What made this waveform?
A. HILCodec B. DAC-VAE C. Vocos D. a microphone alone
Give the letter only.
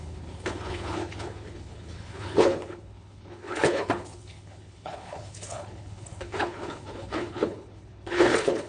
A